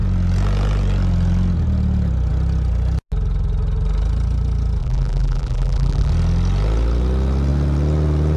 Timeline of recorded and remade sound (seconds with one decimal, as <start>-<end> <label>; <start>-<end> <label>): 0.0-4.8 recorded; 4.8-6.1 remade; 6.1-8.4 recorded